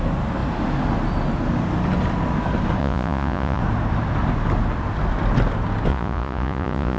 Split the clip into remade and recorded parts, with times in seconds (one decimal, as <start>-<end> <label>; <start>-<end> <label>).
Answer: 0.0-2.8 recorded; 2.8-3.6 remade; 3.6-5.9 recorded; 5.9-7.0 remade